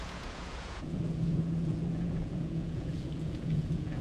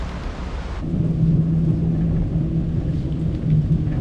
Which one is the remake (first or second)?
first